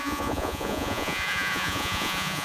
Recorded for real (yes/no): no